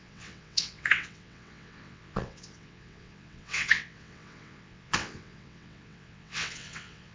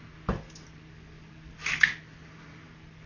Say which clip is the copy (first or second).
first